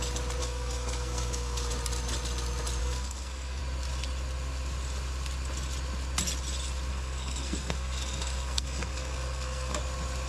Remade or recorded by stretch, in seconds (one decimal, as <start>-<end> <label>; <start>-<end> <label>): 0.0-0.4 recorded; 0.4-1.7 remade; 1.7-2.8 recorded; 2.8-3.6 remade; 3.6-6.9 recorded; 6.9-9.8 remade; 9.8-10.3 recorded